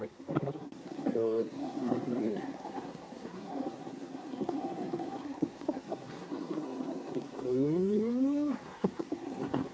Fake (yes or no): yes